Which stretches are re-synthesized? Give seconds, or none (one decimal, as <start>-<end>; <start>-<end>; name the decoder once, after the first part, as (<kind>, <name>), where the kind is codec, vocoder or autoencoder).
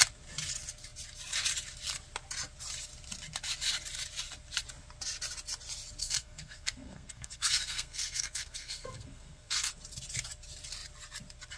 6.0-9.7 (codec, SNAC)